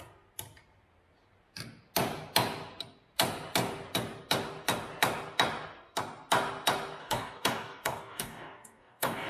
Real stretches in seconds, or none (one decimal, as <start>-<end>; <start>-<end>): 0.0-7.0